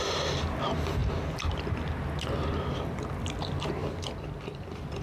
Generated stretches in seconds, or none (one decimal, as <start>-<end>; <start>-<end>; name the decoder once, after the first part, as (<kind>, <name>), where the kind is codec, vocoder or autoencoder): 0.0-1.0 (vocoder, BigVGAN v2); 2.2-3.8; 4.6-5.0